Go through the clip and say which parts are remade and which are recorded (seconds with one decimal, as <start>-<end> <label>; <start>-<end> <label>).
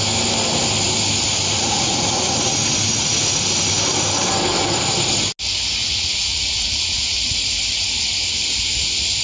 0.0-1.4 recorded; 1.4-2.3 remade; 2.3-2.9 recorded; 2.9-3.7 remade; 3.7-5.8 recorded; 5.8-7.2 remade; 7.2-9.2 recorded